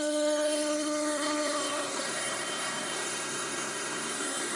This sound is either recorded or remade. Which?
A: remade